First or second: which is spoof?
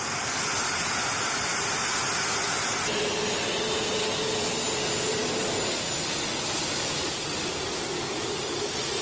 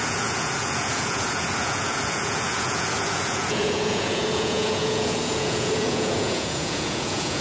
second